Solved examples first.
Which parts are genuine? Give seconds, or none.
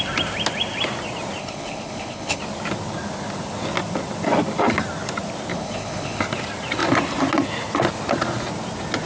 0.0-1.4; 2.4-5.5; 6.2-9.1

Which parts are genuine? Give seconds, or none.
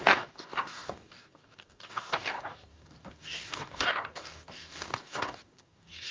none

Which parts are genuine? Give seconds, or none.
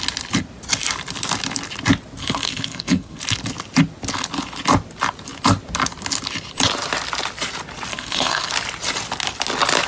0.0-2.2; 3.2-7.9; 8.5-9.9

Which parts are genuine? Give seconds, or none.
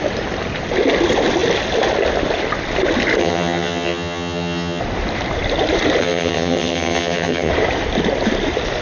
0.0-3.2; 4.8-6.0; 7.5-8.8